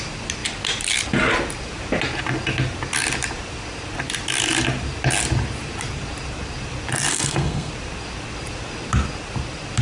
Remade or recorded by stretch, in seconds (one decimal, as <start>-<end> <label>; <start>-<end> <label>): 0.0-7.1 recorded; 7.1-7.7 remade; 7.7-9.8 recorded